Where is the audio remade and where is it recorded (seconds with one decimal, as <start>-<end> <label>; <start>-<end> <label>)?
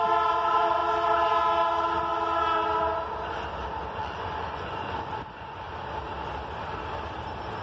0.0-4.0 recorded; 4.0-5.7 remade; 5.7-7.6 recorded